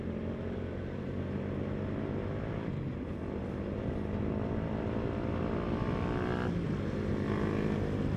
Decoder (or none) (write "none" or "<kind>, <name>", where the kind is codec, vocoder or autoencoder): none